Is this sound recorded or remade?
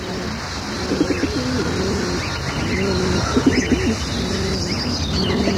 recorded